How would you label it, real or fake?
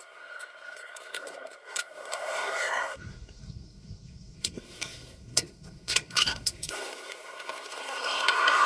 fake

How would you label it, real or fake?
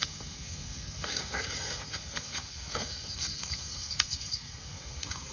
fake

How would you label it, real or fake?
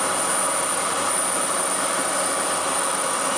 real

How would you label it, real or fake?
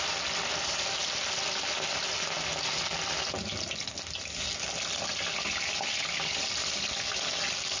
real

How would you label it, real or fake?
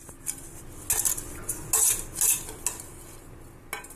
real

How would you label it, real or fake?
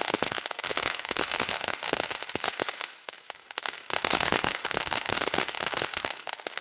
fake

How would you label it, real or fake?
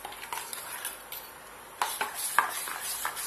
real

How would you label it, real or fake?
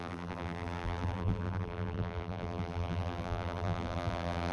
fake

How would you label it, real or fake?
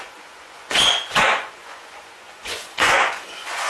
fake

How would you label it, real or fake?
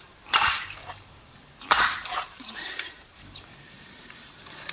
fake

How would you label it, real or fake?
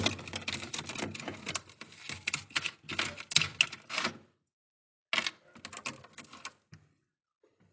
real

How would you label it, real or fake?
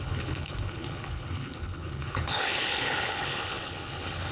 fake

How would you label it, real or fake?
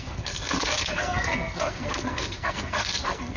fake